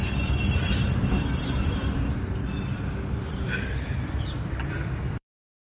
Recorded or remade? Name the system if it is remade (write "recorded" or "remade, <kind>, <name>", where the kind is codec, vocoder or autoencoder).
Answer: remade, vocoder, BigVGAN v2